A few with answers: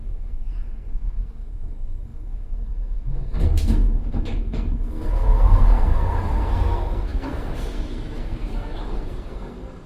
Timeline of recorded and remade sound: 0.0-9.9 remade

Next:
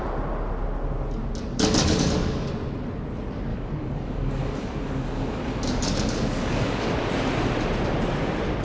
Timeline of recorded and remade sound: 0.0-1.5 recorded; 1.5-2.5 remade; 2.5-3.5 recorded; 3.5-6.9 remade; 6.9-8.6 recorded